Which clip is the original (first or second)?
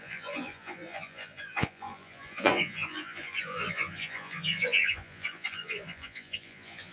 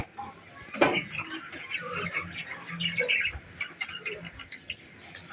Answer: second